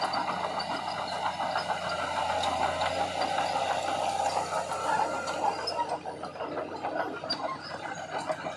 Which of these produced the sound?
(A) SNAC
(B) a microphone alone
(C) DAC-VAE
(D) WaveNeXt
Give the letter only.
B